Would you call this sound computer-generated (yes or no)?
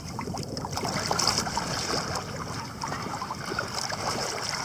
no